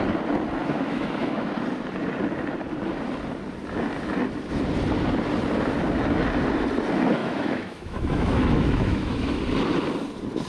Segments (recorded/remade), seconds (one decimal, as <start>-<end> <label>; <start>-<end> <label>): 0.0-0.6 recorded; 0.6-1.5 remade; 1.5-7.2 recorded; 7.2-9.4 remade; 9.4-10.5 recorded